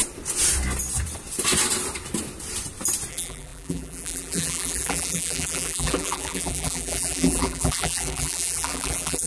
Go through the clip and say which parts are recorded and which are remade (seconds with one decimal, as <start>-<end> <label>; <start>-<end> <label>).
0.0-3.1 recorded; 3.1-9.3 remade